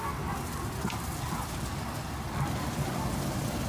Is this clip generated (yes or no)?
no